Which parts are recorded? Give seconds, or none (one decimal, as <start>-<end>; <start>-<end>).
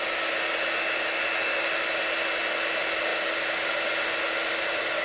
0.0-5.0